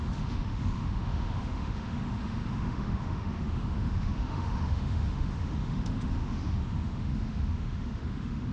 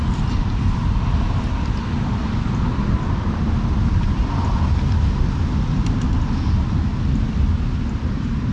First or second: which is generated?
first